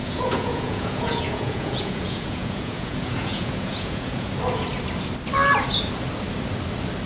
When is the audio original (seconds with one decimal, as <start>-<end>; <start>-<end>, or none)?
4.3-7.1